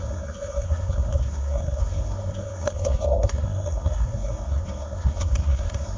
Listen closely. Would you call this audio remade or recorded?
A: remade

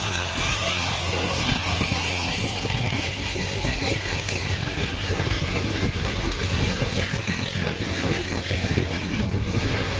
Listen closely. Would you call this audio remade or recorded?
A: remade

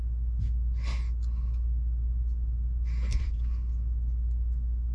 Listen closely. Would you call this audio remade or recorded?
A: recorded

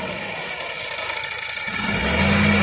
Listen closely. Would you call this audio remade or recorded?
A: recorded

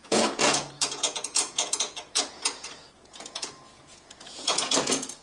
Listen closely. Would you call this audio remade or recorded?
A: remade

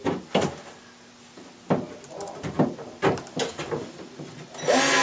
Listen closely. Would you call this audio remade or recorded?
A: recorded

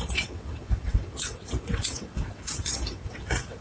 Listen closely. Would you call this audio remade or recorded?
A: remade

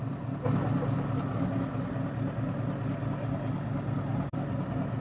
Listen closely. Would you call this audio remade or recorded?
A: recorded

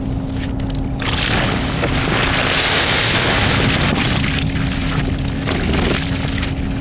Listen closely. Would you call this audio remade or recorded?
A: recorded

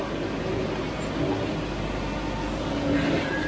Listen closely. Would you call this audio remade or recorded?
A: recorded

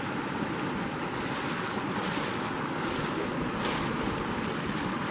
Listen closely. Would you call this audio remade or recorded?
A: recorded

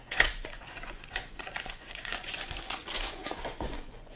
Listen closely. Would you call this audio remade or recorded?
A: remade